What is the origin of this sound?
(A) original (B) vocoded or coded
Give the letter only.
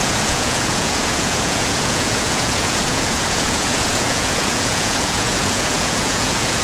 B